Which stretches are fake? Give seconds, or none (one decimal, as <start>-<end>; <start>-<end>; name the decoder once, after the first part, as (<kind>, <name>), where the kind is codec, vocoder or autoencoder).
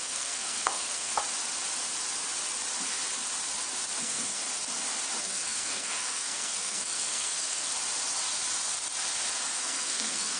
0.0-1.1 (codec, SNAC); 4.0-4.4; 5.2-7.7; 9.6-10.4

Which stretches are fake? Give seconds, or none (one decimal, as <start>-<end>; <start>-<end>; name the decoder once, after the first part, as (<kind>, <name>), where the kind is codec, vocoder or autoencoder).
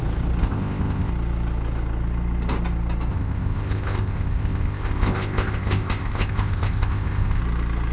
0.4-1.1 (codec, ZipCodec); 3.1-7.4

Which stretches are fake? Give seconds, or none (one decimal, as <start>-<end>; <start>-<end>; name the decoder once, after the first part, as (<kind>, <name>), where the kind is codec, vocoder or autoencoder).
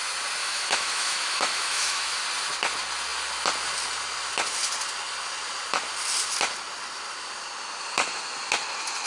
0.4-2.2 (autoencoder, DAC-VAE)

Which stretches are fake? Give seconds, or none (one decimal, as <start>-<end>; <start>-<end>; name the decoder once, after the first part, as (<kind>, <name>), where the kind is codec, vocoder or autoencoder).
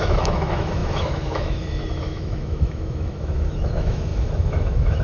0.0-5.0 (autoencoder, DAC-VAE)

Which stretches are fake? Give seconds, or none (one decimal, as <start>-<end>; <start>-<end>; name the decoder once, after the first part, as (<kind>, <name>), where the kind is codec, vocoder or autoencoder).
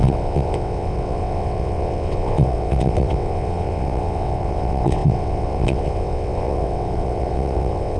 0.0-8.0 (vocoder, WaveNeXt)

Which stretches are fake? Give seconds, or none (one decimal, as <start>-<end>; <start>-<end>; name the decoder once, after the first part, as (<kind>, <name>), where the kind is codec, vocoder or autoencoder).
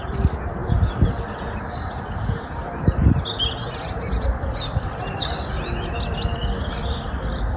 0.0-0.6 (vocoder, BigVGAN v2); 1.5-7.6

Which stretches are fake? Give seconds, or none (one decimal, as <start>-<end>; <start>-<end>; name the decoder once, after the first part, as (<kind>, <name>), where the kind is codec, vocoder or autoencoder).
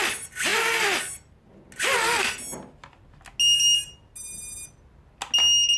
none